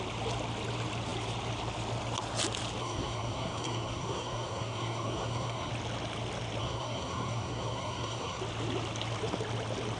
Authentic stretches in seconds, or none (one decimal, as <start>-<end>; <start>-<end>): 0.0-2.8; 5.7-6.6; 8.4-10.0